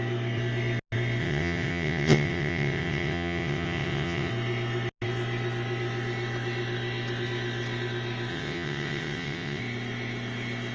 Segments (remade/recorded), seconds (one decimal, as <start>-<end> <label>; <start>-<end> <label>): 0.0-1.2 recorded; 1.2-4.3 remade; 4.3-8.3 recorded; 8.3-9.6 remade; 9.6-10.7 recorded